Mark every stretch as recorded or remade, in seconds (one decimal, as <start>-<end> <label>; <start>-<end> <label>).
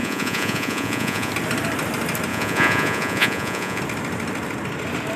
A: 0.0-1.3 remade; 1.3-2.3 recorded; 2.3-3.8 remade; 3.8-5.2 recorded